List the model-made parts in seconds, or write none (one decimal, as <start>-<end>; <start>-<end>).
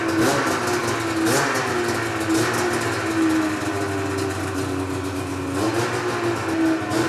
none